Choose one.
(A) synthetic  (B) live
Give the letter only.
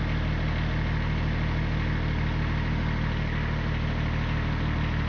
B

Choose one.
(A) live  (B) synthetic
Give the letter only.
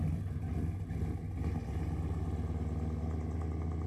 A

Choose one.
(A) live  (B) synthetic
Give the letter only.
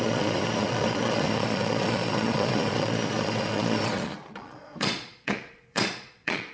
B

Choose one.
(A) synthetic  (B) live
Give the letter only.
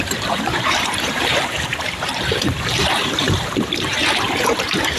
A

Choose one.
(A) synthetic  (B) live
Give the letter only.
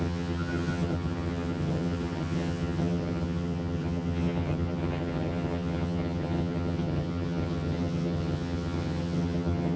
A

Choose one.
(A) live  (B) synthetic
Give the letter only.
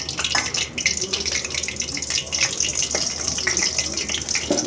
A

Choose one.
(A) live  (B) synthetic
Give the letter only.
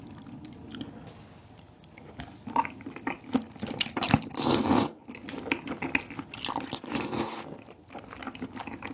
A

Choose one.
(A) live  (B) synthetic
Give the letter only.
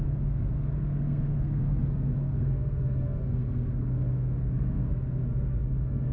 B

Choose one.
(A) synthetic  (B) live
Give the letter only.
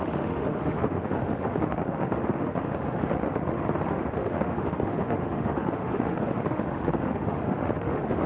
A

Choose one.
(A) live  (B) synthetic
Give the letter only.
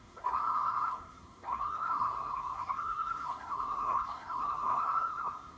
B